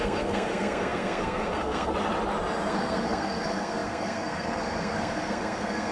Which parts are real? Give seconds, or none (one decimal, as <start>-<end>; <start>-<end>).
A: 1.9-2.7